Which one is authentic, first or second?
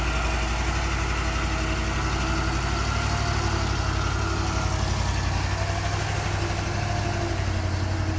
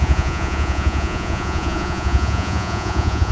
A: first